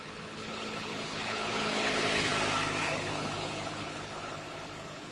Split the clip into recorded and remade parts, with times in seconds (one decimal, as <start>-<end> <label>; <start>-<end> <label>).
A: 0.0-2.3 remade; 2.3-2.8 recorded; 2.8-5.1 remade